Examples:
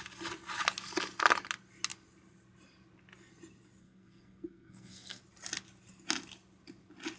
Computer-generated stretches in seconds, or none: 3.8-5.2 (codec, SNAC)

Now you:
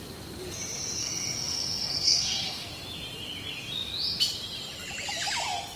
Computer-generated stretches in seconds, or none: 1.0-2.7 (codec, SNAC)

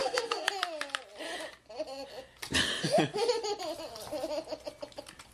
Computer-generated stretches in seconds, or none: 0.0-0.5 (codec, SNAC)

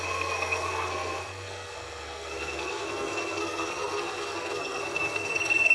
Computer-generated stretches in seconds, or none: 0.0-5.7 (codec, SNAC)

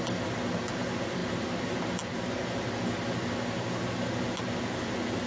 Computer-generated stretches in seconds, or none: none

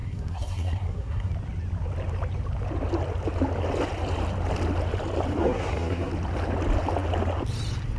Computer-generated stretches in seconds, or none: 0.0-1.3 (codec, SNAC); 5.4-6.1